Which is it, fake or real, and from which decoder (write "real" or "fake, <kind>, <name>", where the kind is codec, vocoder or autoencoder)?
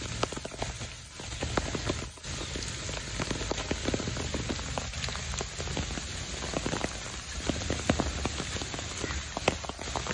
real